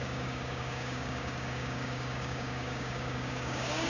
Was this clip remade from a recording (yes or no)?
yes